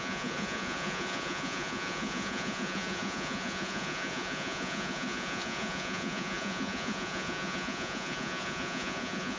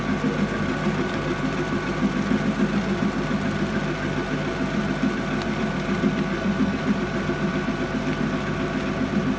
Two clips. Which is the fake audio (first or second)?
first